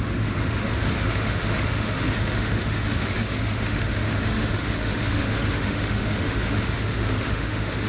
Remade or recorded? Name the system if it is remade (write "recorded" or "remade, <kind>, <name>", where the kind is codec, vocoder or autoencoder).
remade, autoencoder, DAC-VAE